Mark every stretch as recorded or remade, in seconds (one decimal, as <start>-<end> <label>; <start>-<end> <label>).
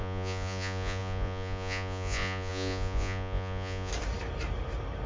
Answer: 0.0-3.9 remade; 3.9-5.1 recorded